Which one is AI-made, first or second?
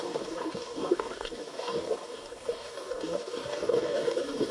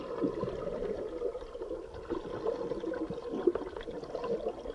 first